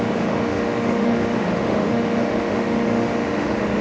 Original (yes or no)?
no